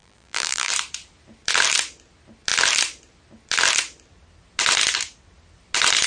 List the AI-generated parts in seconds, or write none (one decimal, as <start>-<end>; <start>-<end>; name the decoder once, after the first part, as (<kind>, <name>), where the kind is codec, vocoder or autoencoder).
0.0-0.7 (vocoder, BigVGAN v2)